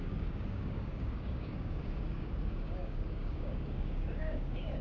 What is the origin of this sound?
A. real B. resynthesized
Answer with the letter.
B